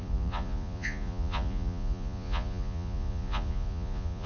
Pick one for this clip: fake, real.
fake